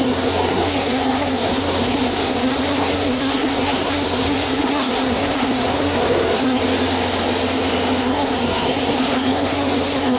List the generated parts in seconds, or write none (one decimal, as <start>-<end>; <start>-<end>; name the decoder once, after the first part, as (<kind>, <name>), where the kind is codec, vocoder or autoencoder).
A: 0.0-6.6 (codec, SNAC); 8.0-10.2